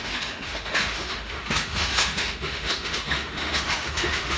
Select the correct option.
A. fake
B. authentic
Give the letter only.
A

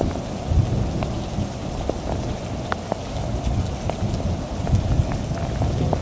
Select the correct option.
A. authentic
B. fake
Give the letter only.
A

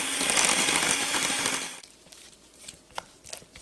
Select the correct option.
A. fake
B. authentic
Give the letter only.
A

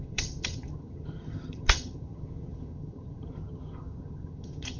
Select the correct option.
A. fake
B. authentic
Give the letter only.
A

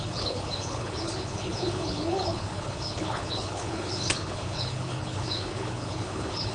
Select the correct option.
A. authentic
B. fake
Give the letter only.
B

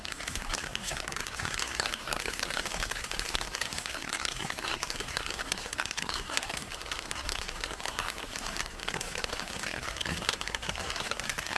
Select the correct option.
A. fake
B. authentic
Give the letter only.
A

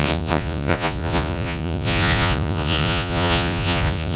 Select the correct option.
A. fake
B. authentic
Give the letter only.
A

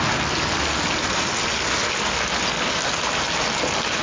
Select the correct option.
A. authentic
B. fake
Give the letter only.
A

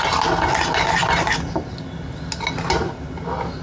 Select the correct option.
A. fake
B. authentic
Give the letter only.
B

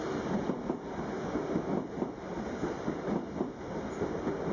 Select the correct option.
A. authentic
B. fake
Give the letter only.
A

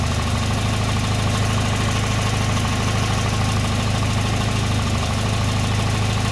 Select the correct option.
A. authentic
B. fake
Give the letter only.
A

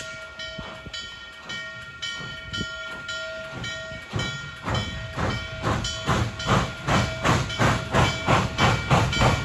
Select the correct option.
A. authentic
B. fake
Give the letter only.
A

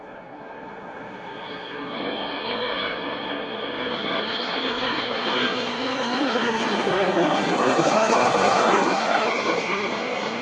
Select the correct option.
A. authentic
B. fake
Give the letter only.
B